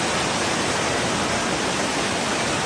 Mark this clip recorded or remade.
recorded